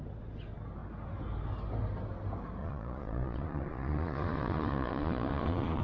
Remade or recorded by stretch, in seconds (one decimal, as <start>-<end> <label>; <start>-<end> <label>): 0.0-2.6 recorded; 2.6-5.8 remade